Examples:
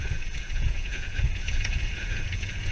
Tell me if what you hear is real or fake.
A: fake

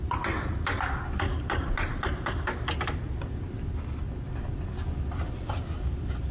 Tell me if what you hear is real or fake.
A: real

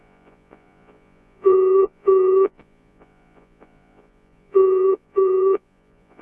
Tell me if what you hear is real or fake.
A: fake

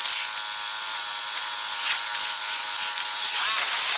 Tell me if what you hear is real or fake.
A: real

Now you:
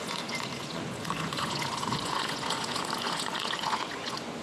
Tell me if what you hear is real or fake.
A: fake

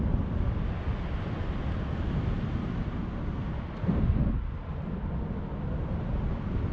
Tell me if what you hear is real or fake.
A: real